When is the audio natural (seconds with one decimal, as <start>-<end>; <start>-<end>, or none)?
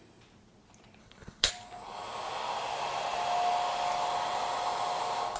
0.0-1.0; 1.5-5.4